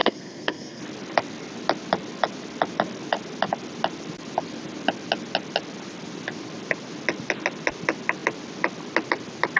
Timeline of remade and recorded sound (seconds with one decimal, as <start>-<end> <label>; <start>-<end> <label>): 0.0-0.8 remade; 0.8-9.6 recorded